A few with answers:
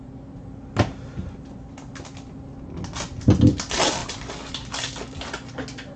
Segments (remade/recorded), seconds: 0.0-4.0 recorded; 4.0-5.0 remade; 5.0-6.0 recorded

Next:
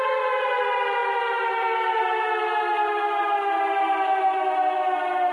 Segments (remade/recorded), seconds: 0.0-5.3 recorded

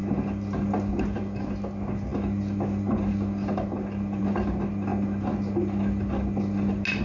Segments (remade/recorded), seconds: 0.0-7.0 recorded

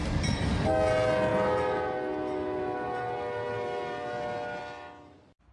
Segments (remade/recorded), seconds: 0.0-5.5 recorded

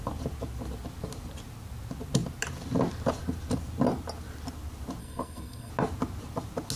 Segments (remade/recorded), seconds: 0.0-5.0 recorded; 5.0-5.7 remade; 5.7-6.8 recorded

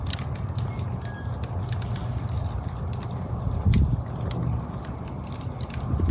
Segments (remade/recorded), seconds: 0.0-6.1 recorded